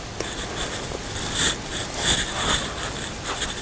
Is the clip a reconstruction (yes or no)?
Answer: no